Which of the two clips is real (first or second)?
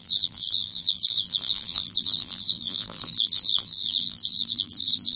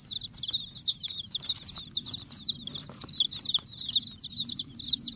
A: second